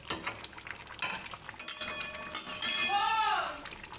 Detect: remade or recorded recorded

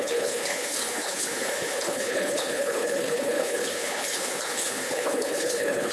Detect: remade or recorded remade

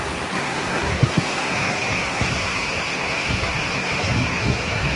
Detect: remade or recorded remade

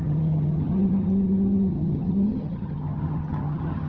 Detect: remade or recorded remade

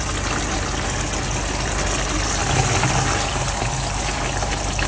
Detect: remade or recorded recorded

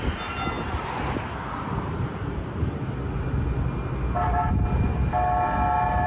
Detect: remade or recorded recorded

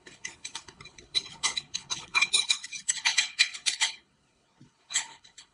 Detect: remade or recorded remade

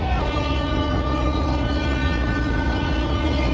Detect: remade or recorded remade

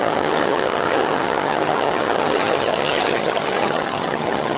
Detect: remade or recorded remade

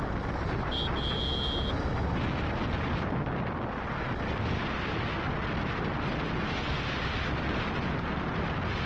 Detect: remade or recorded recorded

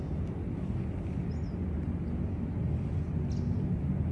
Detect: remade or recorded recorded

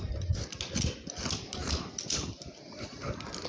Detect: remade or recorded recorded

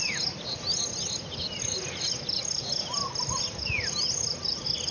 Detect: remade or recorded recorded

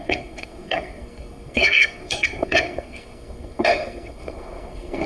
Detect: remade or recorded remade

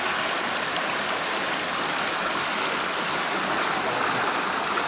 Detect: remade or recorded recorded